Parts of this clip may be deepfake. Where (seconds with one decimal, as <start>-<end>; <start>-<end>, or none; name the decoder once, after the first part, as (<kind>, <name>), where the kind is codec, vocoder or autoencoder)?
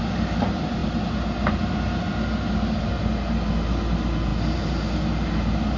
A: none